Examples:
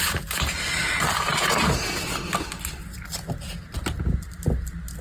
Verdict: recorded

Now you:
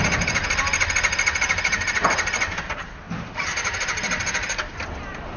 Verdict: recorded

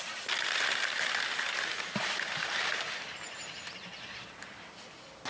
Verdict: recorded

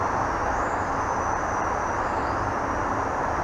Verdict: recorded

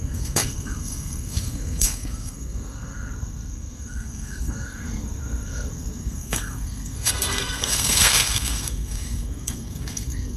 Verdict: remade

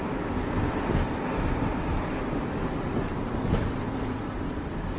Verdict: recorded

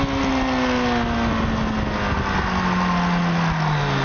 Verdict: recorded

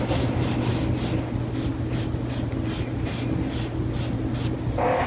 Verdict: recorded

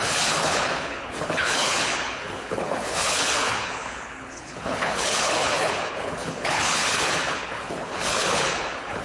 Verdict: remade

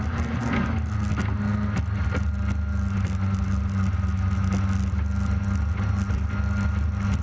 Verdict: recorded